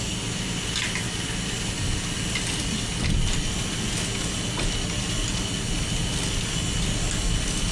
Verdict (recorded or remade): recorded